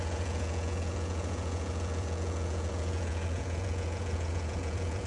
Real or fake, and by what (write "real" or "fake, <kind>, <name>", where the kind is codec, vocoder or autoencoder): fake, vocoder, Vocos